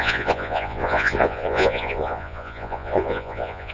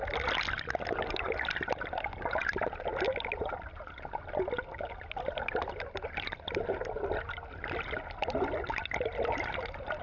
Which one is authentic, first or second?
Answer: second